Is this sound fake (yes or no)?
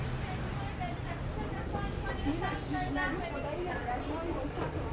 no